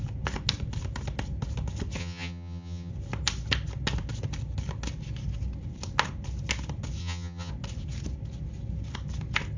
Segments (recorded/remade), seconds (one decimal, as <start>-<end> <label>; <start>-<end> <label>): 0.0-2.0 recorded; 2.0-2.9 remade; 2.9-7.0 recorded; 7.0-7.5 remade; 7.5-9.6 recorded